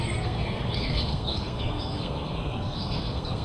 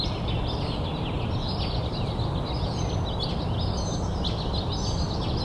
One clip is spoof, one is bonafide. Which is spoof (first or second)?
first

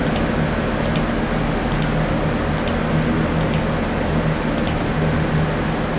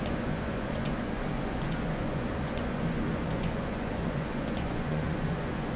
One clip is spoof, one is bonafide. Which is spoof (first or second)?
second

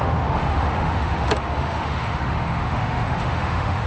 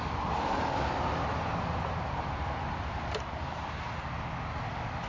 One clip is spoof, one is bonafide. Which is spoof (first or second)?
first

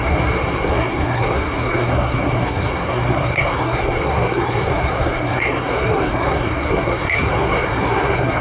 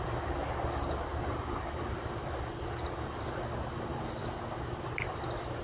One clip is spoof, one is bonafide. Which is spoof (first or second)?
first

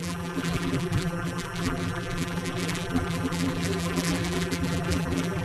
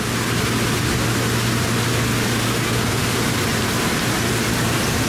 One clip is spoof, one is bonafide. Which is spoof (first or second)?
first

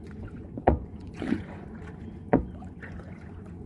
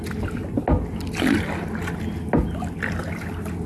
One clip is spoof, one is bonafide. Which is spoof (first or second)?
first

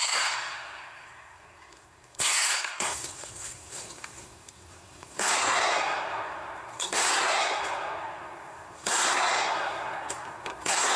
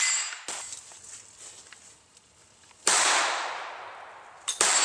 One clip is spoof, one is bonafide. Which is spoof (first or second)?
first